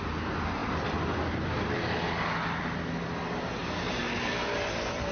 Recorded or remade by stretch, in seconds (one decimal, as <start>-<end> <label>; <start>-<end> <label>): 0.0-5.1 recorded

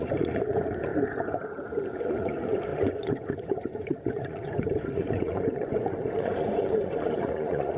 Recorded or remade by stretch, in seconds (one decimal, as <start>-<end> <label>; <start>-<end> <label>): 0.0-0.9 remade; 0.9-1.8 recorded; 1.8-7.8 remade

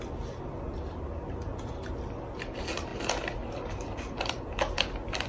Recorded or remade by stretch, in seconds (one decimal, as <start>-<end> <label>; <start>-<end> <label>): 0.0-5.3 recorded